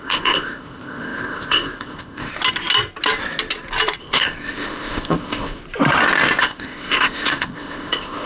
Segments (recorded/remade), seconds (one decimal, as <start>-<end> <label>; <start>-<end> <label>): 0.0-2.3 remade; 2.3-4.0 recorded; 4.0-5.6 remade; 5.6-6.4 recorded; 6.4-8.3 remade